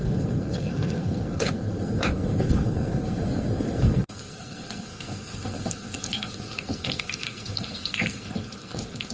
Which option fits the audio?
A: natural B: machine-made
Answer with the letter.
B